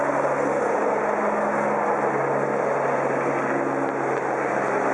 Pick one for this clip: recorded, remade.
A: recorded